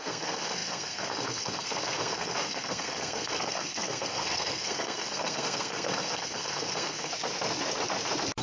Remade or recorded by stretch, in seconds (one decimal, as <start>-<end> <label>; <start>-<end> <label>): 0.0-7.1 remade; 7.1-8.4 recorded